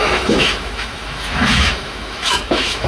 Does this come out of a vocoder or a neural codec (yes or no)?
yes